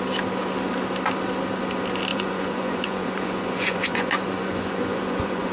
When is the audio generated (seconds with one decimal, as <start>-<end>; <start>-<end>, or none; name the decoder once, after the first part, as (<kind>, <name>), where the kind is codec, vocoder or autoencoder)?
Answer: 2.1-5.5 (vocoder, Vocos)